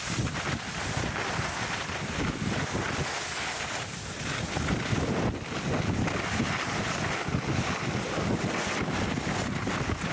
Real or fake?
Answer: real